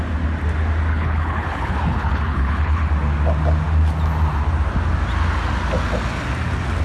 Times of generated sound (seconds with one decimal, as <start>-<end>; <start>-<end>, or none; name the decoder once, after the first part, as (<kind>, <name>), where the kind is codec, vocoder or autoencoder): 0.9-2.9 (codec, HILCodec)

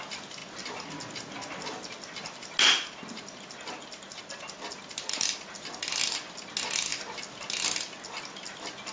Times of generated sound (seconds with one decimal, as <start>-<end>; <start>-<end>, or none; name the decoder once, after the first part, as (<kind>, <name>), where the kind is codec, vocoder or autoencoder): none

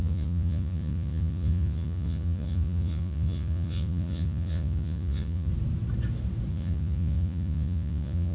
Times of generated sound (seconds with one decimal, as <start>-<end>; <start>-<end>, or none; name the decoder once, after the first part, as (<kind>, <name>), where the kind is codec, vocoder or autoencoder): 0.0-5.5 (vocoder, Vocos); 6.5-8.3

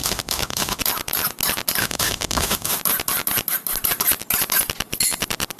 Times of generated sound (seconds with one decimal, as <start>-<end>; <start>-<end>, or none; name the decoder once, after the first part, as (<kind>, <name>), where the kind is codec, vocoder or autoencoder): 0.0-0.8 (autoencoder, DAC-VAE); 1.8-2.8

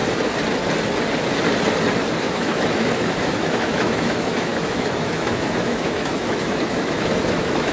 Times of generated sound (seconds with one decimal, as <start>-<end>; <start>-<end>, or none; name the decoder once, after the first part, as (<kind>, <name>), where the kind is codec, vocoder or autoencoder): 2.2-7.7 (autoencoder, DAC-VAE)

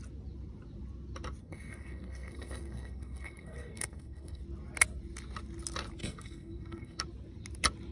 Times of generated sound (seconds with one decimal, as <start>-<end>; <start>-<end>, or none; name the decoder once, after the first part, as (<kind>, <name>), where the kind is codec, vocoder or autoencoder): 1.4-4.4 (codec, SNAC); 6.0-7.0